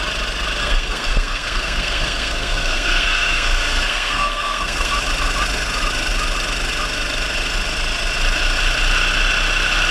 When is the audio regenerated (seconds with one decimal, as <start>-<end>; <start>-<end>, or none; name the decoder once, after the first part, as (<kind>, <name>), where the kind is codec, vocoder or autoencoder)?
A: 0.6-4.9 (codec, SNAC)